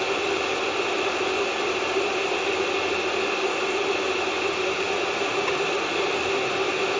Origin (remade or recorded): recorded